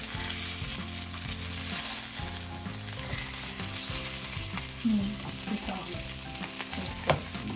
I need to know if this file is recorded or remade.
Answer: recorded